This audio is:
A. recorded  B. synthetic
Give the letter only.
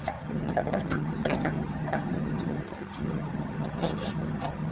B